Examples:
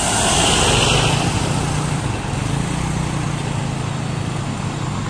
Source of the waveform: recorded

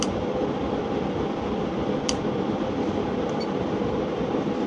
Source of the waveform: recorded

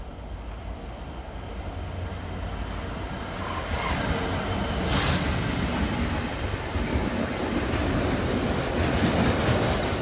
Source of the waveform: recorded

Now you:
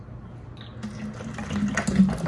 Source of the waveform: recorded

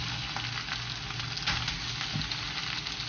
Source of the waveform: recorded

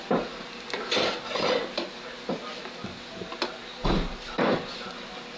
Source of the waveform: recorded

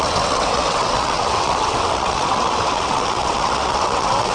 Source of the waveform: remade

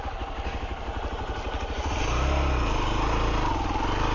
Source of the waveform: recorded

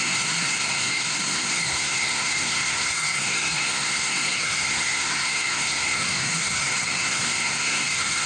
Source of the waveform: remade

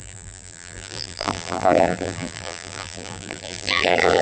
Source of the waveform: remade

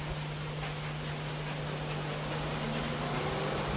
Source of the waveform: recorded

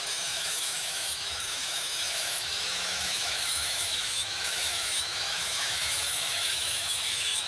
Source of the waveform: remade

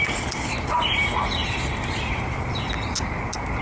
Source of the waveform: recorded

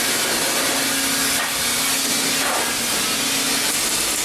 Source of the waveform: recorded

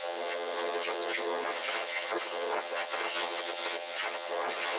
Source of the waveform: remade